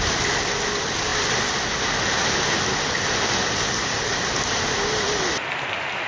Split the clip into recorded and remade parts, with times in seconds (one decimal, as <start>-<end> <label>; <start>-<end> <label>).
0.0-6.1 recorded